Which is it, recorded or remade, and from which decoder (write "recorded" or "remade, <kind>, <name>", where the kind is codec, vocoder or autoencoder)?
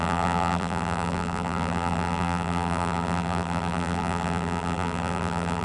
remade, vocoder, BigVGAN v2